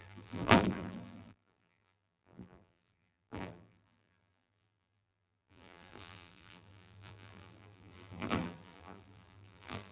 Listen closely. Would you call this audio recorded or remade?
remade